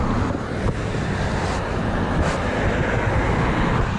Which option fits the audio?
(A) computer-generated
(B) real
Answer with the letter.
B